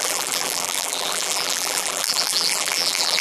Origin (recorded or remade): remade